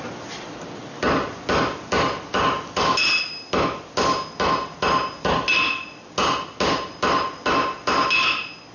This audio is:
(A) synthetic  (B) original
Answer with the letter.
B